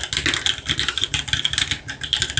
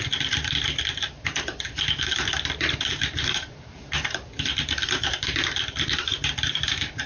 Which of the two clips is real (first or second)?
first